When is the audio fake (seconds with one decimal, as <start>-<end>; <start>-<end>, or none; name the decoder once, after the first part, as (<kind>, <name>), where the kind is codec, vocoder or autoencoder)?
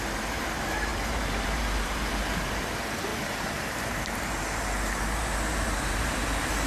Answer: 0.0-6.7 (vocoder, BigVGAN v2)